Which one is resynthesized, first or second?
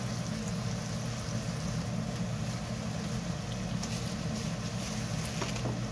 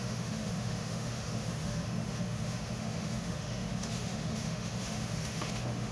second